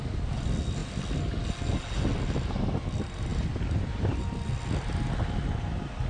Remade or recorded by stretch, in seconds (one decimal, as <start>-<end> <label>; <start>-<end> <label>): 0.0-6.1 recorded